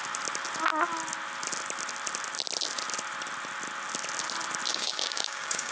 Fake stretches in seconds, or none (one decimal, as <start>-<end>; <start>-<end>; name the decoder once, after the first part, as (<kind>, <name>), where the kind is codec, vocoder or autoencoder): 4.7-5.7 (codec, DAC)